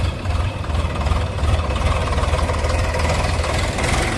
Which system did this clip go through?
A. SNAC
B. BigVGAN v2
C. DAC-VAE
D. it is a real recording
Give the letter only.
D